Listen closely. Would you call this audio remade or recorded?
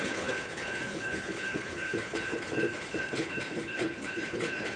remade